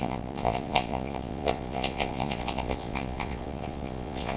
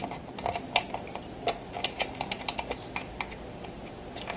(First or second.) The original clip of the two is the second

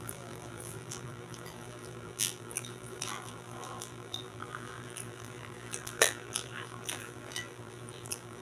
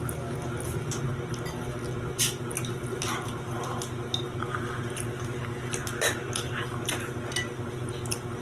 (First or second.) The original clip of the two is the second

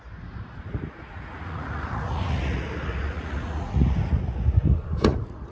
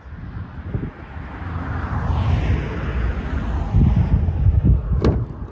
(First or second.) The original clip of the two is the second